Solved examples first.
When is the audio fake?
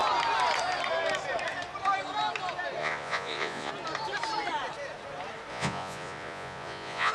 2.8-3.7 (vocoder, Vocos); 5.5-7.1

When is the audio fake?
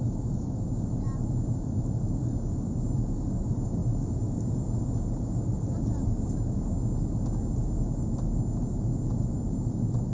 none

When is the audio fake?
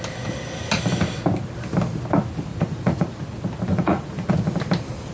2.5-3.2 (vocoder, Vocos); 3.7-4.3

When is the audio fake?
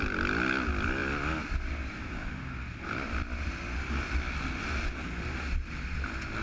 none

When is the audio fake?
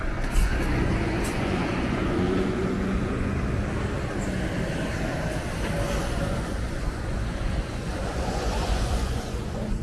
0.0-3.4 (vocoder, Vocos); 6.0-9.8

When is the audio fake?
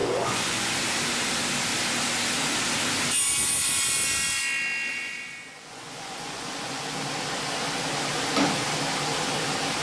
0.0-0.7 (vocoder, Vocos); 4.9-6.8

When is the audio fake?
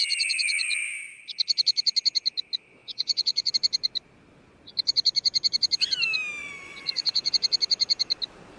0.0-0.8 (vocoder, Vocos); 2.8-3.5; 6.4-7.3